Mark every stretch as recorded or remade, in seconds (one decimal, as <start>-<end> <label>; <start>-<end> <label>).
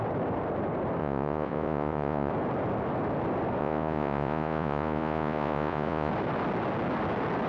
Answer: 0.0-1.0 recorded; 1.0-2.3 remade; 2.3-3.6 recorded; 3.6-6.1 remade; 6.1-7.5 recorded